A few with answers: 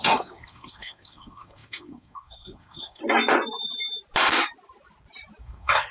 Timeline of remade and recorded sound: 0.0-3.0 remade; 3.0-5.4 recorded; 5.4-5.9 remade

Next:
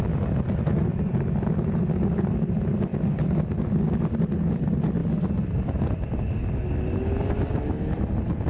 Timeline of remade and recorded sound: 0.0-0.9 recorded; 0.9-1.8 remade; 1.8-8.5 recorded

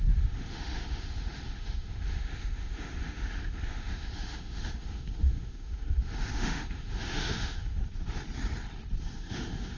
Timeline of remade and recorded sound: 0.0-7.8 remade; 7.8-9.0 recorded; 9.0-9.8 remade

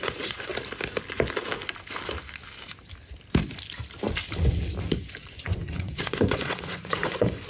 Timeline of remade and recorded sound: 0.0-0.5 remade; 0.5-4.9 recorded; 4.9-7.5 remade

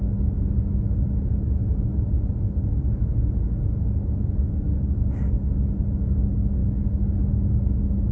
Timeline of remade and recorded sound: 0.0-8.1 recorded

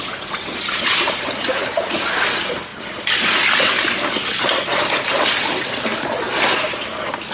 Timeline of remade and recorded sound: 0.0-7.3 recorded